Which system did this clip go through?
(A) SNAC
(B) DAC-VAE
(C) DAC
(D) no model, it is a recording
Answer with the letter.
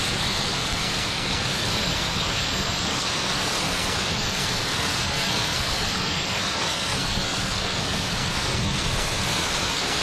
A